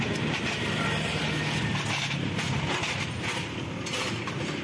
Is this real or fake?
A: real